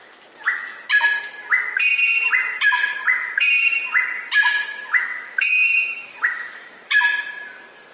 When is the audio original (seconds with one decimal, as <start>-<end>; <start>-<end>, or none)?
0.0-5.0; 7.0-7.9